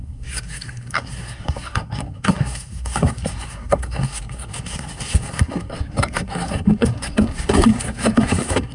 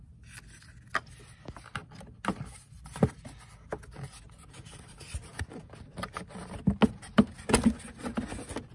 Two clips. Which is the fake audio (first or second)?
first